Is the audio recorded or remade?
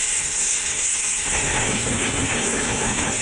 remade